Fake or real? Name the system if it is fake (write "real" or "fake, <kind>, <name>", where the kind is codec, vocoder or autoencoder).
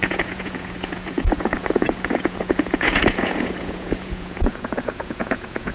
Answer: fake, vocoder, Vocos